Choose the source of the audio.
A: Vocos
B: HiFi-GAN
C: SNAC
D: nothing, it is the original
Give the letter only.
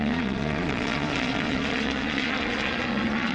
A